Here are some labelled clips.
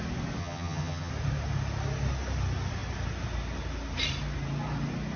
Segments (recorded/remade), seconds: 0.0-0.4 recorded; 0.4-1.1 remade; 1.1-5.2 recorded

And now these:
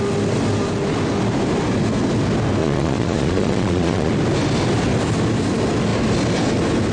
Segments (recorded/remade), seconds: 0.0-2.6 recorded; 2.6-4.1 remade; 4.1-6.9 recorded

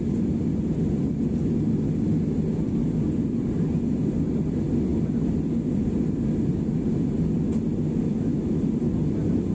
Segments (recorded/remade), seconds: 0.0-8.1 recorded; 8.1-8.6 remade; 8.6-9.5 recorded

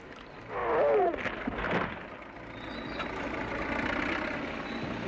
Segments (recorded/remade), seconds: 0.0-5.1 recorded

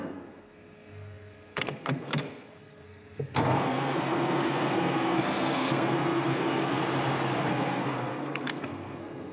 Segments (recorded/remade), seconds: 0.0-6.8 remade; 6.8-7.5 recorded; 7.5-9.3 remade